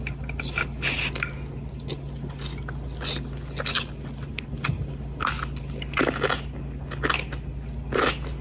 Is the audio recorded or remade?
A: recorded